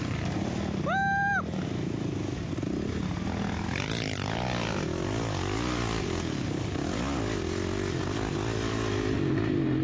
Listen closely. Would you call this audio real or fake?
real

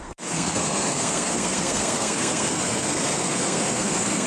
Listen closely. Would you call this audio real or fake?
fake